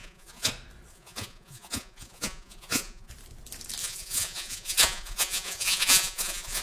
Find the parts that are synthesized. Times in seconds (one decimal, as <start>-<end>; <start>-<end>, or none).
0.0-0.5; 0.9-3.1; 3.8-6.6